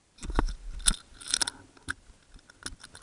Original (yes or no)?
yes